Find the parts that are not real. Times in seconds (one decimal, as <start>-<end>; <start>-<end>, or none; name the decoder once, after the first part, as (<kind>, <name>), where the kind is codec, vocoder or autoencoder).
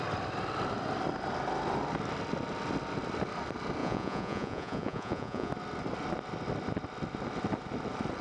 3.8-5.5 (vocoder, Vocos)